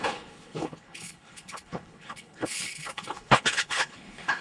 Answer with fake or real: fake